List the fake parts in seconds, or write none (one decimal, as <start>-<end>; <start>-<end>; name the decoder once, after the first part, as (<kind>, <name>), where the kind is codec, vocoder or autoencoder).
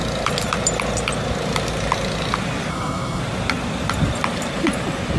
2.7-3.2 (codec, SNAC)